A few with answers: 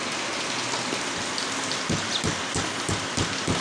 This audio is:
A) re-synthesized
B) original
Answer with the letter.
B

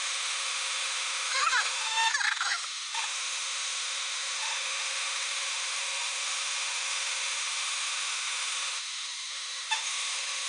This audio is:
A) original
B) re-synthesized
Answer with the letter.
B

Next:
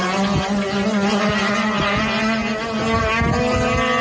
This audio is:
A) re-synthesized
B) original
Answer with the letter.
B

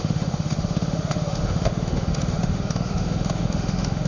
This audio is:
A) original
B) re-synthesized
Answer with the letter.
B